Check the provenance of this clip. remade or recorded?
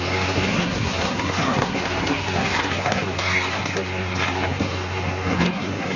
remade